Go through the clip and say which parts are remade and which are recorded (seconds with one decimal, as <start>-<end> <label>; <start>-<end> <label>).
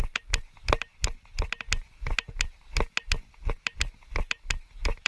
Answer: 0.0-2.7 remade; 2.7-3.5 recorded; 3.5-5.1 remade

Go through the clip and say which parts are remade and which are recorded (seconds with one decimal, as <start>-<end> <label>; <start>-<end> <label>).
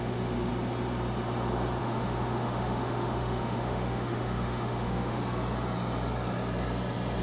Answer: 0.0-0.5 remade; 0.5-1.8 recorded; 1.8-5.2 remade; 5.2-7.2 recorded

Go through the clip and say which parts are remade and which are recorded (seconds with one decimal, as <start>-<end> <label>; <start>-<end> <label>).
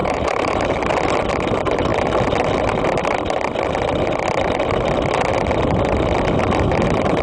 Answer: 0.0-0.7 remade; 0.7-7.2 recorded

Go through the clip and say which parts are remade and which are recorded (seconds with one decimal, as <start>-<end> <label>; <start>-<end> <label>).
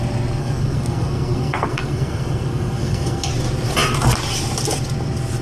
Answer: 0.0-0.4 recorded; 0.4-3.3 remade; 3.3-5.4 recorded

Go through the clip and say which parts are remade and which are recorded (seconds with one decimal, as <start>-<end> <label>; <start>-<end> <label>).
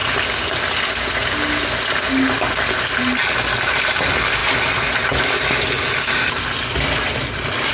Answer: 0.0-7.7 recorded